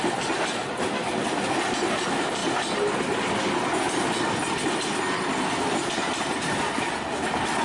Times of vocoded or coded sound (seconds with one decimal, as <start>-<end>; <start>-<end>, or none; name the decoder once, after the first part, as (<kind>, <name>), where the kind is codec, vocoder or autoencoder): none